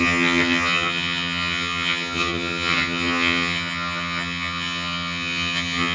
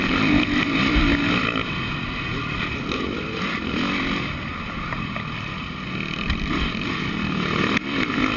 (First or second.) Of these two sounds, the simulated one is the first